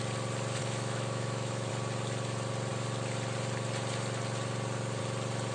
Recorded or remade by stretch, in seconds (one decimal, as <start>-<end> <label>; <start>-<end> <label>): 0.0-0.6 recorded; 0.6-1.7 remade; 1.7-5.5 recorded